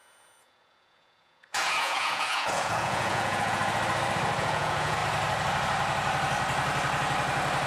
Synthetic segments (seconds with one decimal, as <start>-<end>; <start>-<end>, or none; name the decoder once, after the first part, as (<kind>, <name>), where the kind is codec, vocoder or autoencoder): 0.0-3.6 (vocoder, Vocos); 4.4-5.0